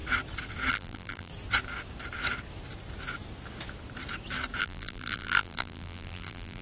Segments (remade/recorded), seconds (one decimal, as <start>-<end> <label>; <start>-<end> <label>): 0.0-0.7 recorded; 0.7-1.3 remade; 1.3-4.6 recorded; 4.6-6.6 remade